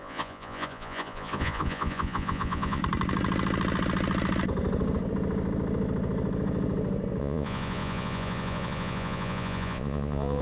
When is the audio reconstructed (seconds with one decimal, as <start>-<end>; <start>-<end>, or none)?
0.0-2.8; 7.2-10.4